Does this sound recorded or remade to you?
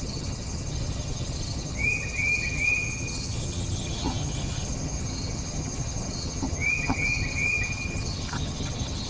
remade